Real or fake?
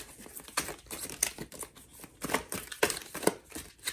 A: real